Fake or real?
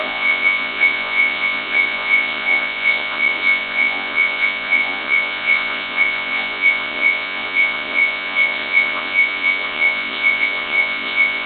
fake